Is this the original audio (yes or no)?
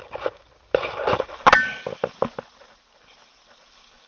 yes